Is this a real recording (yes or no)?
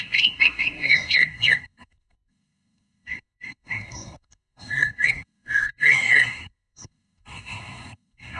no